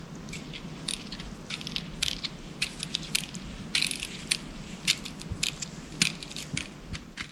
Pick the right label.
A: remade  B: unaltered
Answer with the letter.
B